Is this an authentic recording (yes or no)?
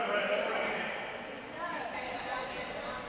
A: yes